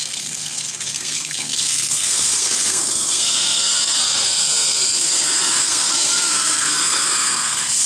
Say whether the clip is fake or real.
fake